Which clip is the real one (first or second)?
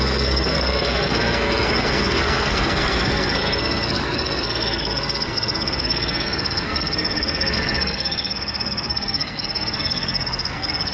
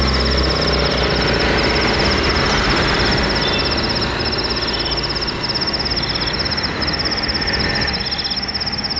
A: second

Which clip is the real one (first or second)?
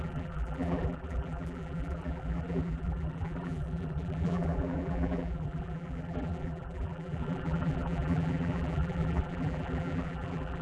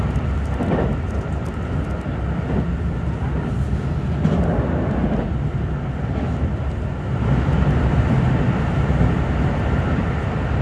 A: second